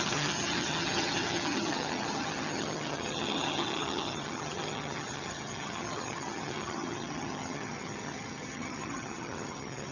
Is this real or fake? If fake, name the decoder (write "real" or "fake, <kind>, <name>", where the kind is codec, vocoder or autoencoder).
fake, vocoder, HiFi-GAN